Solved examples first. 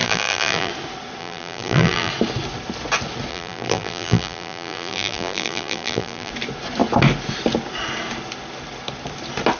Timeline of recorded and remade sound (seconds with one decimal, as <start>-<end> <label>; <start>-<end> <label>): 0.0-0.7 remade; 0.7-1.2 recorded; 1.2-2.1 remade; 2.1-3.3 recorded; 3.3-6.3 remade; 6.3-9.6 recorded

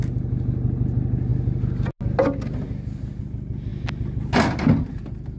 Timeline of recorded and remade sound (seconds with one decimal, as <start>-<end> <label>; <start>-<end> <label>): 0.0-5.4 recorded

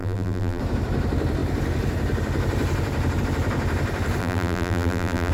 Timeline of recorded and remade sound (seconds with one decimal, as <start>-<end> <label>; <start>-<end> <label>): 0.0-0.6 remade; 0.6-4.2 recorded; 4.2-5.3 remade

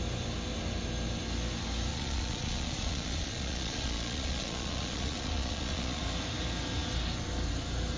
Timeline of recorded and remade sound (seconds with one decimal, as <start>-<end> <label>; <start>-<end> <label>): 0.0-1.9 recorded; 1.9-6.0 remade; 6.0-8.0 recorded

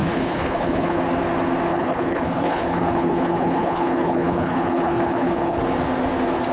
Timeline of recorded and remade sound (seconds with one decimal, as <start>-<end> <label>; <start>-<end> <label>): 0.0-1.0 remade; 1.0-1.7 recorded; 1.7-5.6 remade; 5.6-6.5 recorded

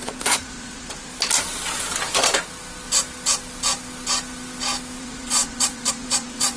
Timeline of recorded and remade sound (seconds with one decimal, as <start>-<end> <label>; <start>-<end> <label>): 0.0-1.1 remade; 1.1-5.0 recorded; 5.0-6.6 remade

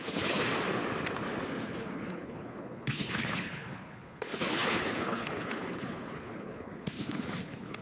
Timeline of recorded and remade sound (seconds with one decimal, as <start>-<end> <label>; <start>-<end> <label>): 0.0-0.4 remade; 0.4-1.6 recorded; 1.6-7.8 remade